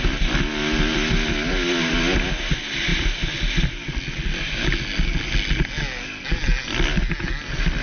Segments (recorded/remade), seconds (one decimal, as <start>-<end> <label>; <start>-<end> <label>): 0.0-7.8 recorded

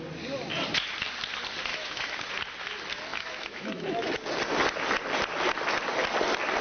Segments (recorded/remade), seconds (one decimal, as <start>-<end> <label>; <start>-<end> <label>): 0.0-1.7 recorded; 1.7-2.3 remade; 2.3-3.1 recorded; 3.1-4.1 remade; 4.1-6.6 recorded